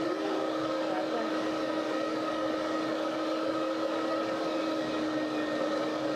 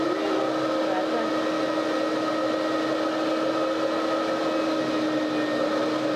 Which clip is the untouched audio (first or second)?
second